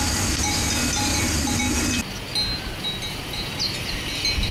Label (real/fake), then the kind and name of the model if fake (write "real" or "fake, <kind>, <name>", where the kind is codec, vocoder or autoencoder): real